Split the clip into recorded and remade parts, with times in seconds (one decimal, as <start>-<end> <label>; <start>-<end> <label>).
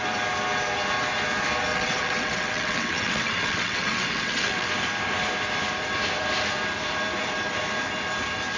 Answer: 0.0-1.7 recorded; 1.7-4.7 remade; 4.7-8.6 recorded